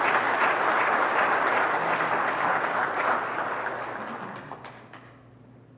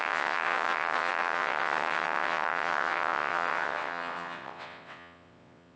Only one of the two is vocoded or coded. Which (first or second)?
second